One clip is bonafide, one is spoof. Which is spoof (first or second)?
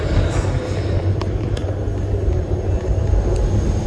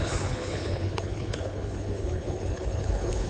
second